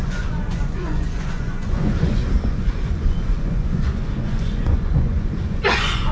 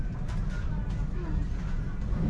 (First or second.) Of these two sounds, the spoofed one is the first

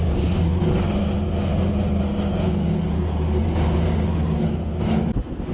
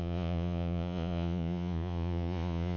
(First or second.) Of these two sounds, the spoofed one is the second